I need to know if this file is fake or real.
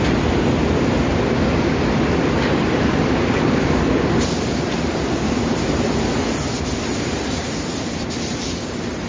fake